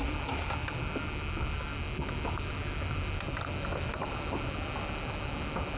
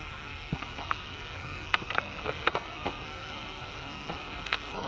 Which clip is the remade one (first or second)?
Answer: second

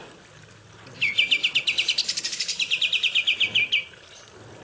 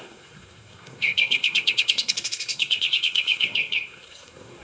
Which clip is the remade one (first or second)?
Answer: second